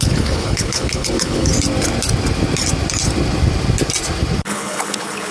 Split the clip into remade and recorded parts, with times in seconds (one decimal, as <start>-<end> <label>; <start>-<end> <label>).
0.0-1.5 remade; 1.5-4.4 recorded; 4.4-5.3 remade